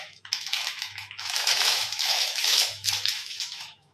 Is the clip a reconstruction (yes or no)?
yes